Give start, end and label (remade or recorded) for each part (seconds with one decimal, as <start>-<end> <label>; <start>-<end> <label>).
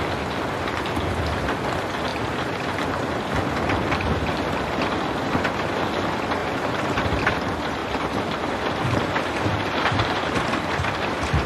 0.0-2.1 recorded; 2.1-3.3 remade; 3.3-6.4 recorded; 6.4-7.3 remade; 7.3-9.5 recorded; 9.5-11.0 remade; 11.0-11.5 recorded